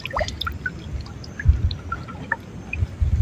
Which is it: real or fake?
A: real